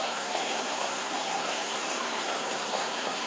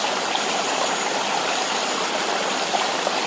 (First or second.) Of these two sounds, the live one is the second